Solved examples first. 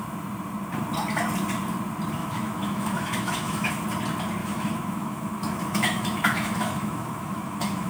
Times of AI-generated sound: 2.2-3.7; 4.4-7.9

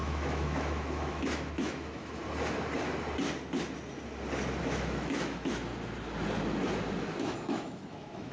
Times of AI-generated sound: 0.0-2.2; 4.6-5.7; 7.0-8.3

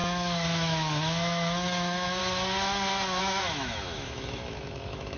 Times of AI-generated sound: 0.0-2.2; 3.2-5.2

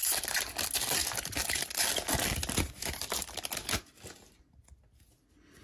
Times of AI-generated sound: none